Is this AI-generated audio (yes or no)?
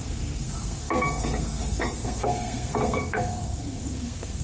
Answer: yes